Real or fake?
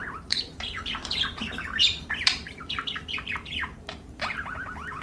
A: fake